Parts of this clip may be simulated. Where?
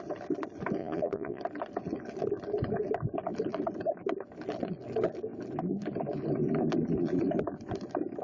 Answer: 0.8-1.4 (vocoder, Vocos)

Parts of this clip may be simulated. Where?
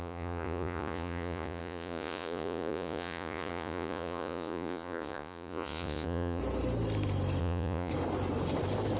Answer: 0.0-6.4 (vocoder, Vocos); 7.4-7.9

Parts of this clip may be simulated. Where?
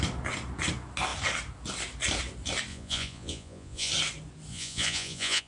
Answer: 2.7-3.9 (vocoder, Vocos); 4.5-5.5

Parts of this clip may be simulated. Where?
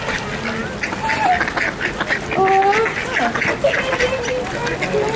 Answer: none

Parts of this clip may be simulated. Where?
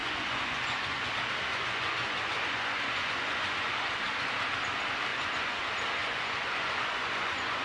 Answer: 0.0-1.1 (vocoder, Vocos); 1.5-3.9; 5.1-5.6; 6.0-7.6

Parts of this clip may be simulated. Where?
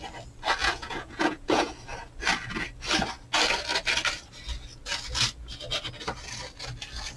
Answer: 0.6-1.7 (vocoder, Vocos)